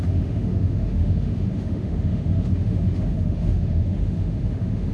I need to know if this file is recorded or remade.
remade